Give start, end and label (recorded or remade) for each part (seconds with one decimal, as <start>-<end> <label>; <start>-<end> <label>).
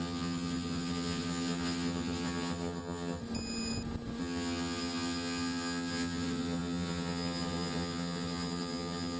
0.0-3.2 remade; 3.2-4.2 recorded; 4.2-9.2 remade